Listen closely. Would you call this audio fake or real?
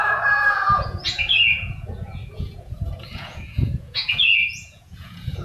fake